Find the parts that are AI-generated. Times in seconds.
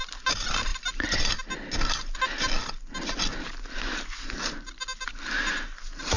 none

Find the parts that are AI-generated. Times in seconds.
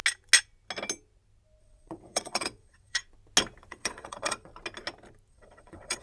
1.6-3.0; 3.7-4.5; 5.3-6.0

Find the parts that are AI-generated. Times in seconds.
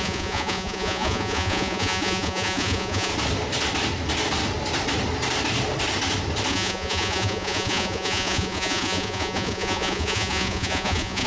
0.0-3.1; 6.5-11.3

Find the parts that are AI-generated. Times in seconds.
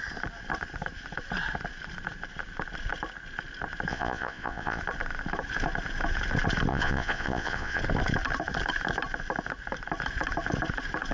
3.9-4.8; 6.7-7.8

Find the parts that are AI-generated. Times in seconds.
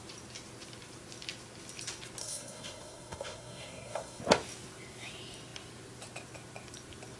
2.2-4.2